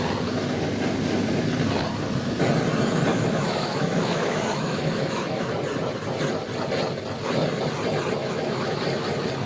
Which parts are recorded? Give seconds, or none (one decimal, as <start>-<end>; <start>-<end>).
0.0-3.1; 5.5-8.2; 8.8-9.5